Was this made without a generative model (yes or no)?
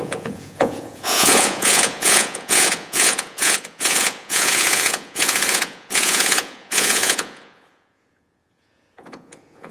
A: no